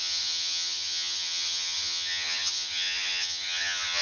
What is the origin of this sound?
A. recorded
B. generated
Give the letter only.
B